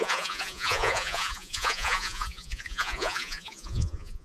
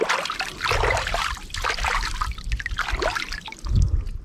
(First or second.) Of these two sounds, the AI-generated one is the first